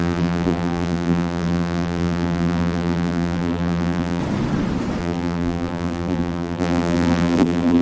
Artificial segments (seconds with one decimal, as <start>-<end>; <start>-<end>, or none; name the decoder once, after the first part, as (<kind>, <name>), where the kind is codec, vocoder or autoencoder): 0.0-4.2 (vocoder, BigVGAN v2); 5.0-7.8